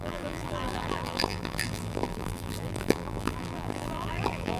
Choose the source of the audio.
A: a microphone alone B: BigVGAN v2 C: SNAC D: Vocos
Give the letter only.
B